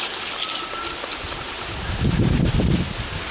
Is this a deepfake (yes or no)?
no